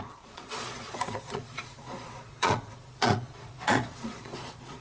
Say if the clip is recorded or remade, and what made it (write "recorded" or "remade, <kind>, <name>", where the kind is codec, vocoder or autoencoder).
remade, vocoder, Vocos